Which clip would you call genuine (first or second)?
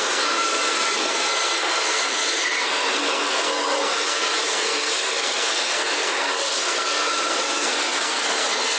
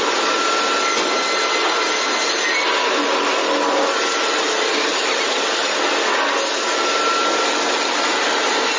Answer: second